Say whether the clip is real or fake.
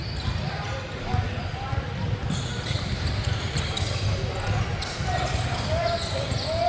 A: real